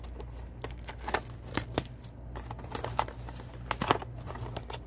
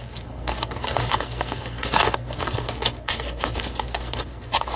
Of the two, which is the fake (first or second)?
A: second